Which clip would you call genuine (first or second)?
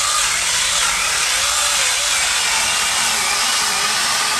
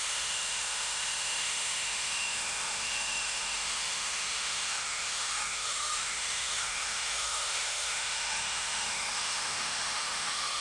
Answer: first